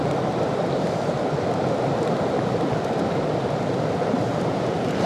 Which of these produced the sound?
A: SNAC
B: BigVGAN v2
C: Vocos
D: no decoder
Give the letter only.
D